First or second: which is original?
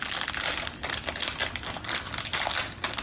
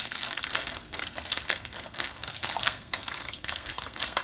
first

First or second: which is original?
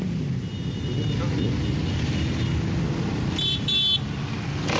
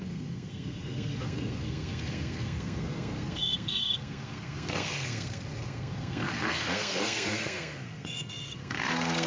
first